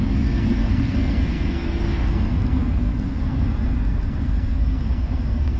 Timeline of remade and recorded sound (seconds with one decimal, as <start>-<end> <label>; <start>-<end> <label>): 0.0-5.6 remade